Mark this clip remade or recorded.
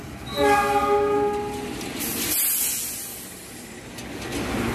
recorded